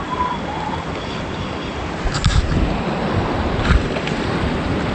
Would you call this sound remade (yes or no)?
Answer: no